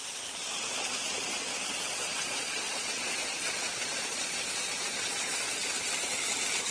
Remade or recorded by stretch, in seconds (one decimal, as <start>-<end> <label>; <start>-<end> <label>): 0.0-1.9 recorded; 1.9-5.4 remade; 5.4-6.7 recorded